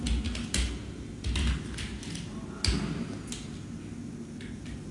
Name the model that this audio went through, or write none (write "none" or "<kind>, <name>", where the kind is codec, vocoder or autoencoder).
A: none